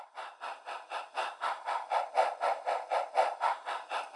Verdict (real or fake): real